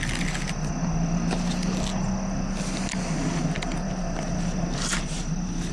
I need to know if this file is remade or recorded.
recorded